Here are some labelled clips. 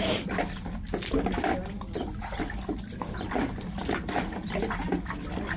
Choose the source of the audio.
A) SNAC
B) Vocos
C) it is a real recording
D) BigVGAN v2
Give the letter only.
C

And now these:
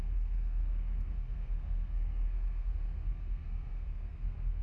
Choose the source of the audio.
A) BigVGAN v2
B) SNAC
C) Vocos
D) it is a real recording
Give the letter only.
B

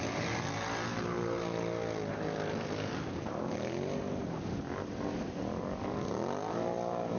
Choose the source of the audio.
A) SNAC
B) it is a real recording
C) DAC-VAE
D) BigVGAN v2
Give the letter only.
B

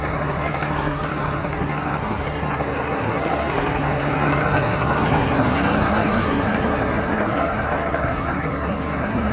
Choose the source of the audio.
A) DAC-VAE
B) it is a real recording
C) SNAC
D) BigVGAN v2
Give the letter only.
C